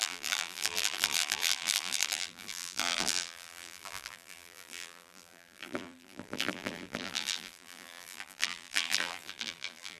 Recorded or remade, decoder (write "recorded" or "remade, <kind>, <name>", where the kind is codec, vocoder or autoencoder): remade, vocoder, BigVGAN v2